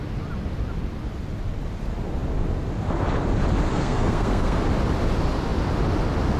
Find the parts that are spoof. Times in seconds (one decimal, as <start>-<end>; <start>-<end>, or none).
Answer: 3.7-4.6